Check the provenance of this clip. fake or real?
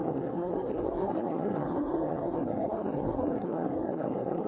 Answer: fake